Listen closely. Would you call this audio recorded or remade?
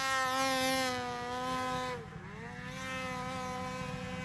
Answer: recorded